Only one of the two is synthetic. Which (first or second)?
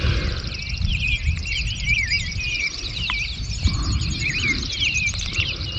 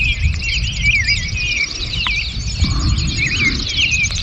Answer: first